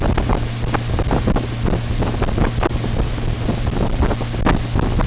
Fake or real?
real